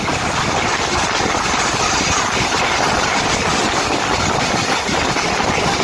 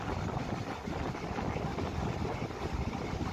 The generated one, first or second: second